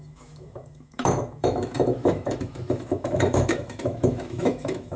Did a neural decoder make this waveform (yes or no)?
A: yes